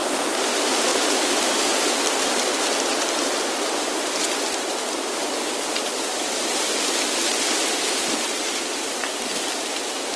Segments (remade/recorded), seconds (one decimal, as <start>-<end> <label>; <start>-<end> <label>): 0.0-10.2 recorded